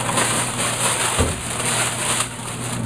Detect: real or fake real